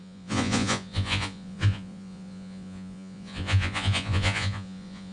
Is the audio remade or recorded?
remade